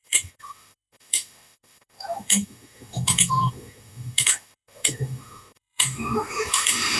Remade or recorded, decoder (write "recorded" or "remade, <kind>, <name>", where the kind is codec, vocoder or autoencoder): remade, autoencoder, DAC-VAE